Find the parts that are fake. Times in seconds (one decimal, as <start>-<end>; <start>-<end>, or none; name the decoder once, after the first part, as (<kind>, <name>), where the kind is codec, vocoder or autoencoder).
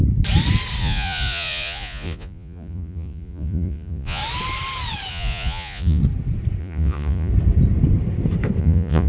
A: 0.8-4.2 (vocoder, Vocos); 5.1-6.0; 6.6-7.3; 8.6-9.1